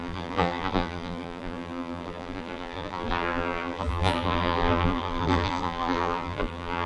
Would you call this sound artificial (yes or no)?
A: yes